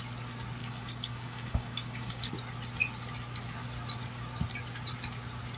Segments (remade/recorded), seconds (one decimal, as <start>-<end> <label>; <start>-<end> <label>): 0.0-0.6 recorded; 0.6-2.3 remade; 2.3-5.6 recorded